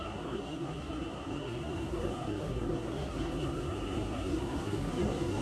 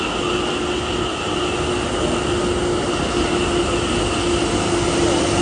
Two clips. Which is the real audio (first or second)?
second